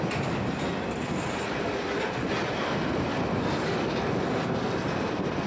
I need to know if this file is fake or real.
real